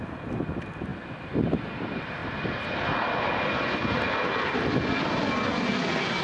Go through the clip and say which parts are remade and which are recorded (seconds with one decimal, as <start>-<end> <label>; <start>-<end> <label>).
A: 0.0-2.2 remade; 2.2-6.2 recorded